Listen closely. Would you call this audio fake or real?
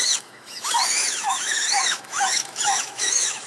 fake